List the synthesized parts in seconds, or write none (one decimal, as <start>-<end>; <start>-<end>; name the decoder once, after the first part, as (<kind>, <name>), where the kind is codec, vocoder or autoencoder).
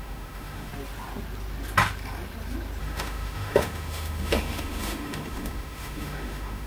0.0-0.7 (autoencoder, DAC-VAE); 2.8-6.7